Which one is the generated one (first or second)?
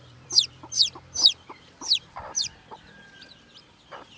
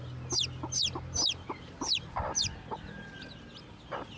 first